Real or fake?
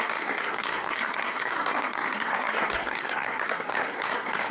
fake